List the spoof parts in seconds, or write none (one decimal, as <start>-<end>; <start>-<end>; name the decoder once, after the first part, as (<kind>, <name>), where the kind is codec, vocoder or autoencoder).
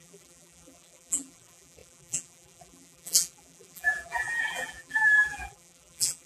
0.0-6.3 (vocoder, BigVGAN v2)